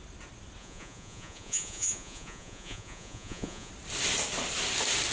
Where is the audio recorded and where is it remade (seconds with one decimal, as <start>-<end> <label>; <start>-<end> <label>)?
0.0-0.6 recorded; 0.6-3.7 remade; 3.7-5.1 recorded